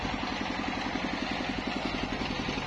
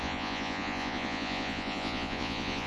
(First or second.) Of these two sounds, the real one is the first